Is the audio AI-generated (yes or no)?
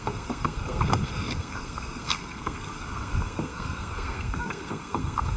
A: yes